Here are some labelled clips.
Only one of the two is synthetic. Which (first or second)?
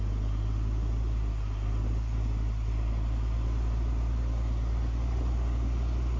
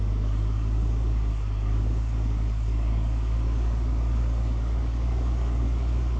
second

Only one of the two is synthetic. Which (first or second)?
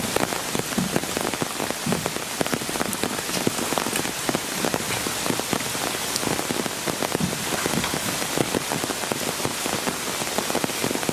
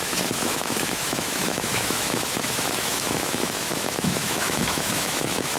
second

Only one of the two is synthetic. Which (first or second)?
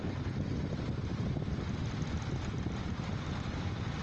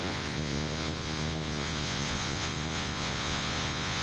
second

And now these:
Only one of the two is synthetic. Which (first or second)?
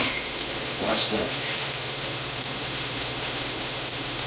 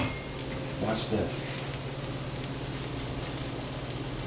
first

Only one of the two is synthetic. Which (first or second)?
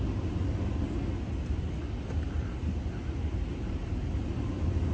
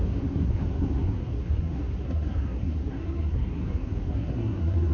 second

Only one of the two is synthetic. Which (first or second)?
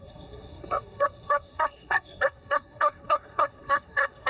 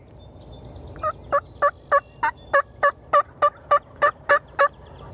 first